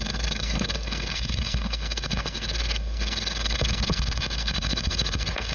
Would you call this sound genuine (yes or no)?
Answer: no